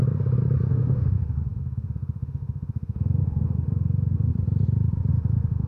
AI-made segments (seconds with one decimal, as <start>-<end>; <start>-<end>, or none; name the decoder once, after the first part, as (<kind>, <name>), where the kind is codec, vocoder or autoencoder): 0.7-4.3 (autoencoder, DAC-VAE); 5.1-5.7